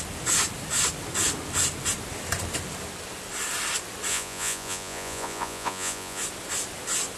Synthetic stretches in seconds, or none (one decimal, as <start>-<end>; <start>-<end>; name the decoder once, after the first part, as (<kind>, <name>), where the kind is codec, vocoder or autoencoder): 4.1-6.2 (vocoder, Vocos)